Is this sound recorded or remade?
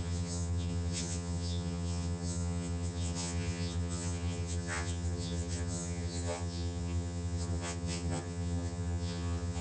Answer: remade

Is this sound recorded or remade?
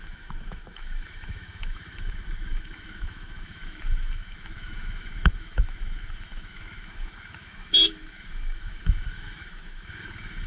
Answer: remade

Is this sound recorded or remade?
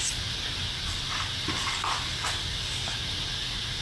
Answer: recorded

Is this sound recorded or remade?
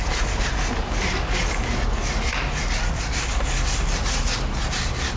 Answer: recorded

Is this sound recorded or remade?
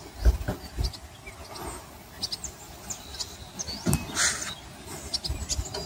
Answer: recorded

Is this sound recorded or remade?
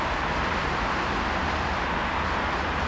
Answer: recorded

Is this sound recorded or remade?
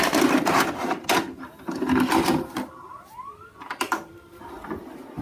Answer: recorded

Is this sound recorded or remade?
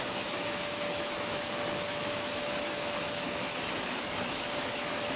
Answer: remade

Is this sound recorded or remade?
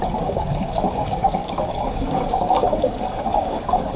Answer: remade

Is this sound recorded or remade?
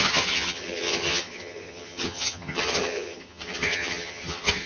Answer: remade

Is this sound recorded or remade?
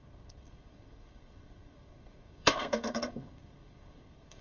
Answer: remade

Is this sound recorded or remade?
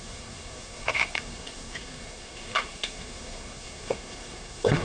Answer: remade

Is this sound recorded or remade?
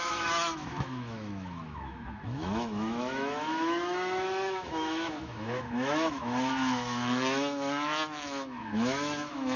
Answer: remade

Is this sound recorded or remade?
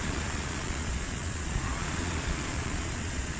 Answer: remade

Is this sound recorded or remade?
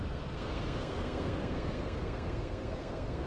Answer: remade